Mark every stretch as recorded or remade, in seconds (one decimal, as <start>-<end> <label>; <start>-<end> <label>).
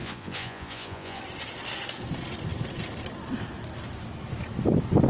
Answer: 0.0-1.2 remade; 1.2-5.1 recorded